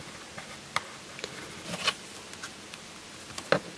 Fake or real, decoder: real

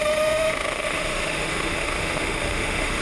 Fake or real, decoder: fake, autoencoder, DAC-VAE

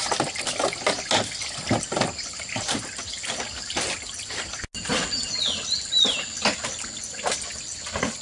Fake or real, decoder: real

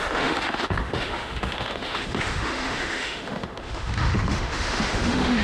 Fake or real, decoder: fake, autoencoder, DAC-VAE